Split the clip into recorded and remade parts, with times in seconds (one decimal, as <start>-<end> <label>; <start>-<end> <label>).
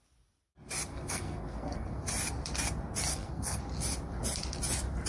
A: 0.0-0.9 recorded; 0.9-2.0 remade; 2.0-3.1 recorded; 3.1-3.6 remade; 3.6-5.1 recorded